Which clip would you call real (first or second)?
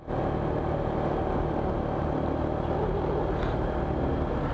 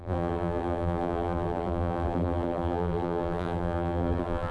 first